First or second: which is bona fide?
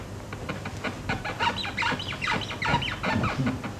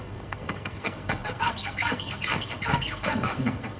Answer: first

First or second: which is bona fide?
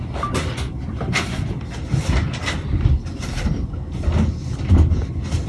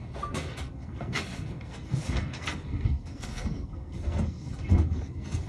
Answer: first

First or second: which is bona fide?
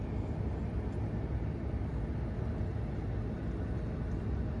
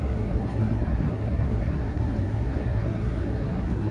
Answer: first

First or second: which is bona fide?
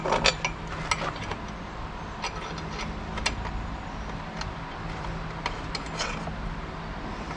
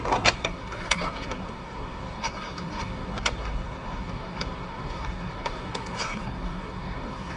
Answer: first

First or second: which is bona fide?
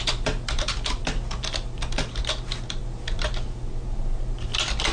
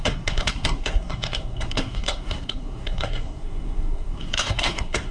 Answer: first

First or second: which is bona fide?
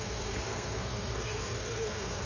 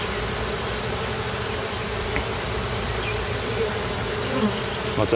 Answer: second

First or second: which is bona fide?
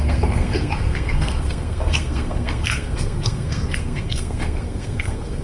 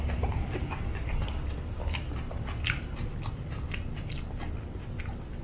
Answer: second